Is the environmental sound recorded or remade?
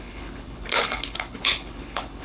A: remade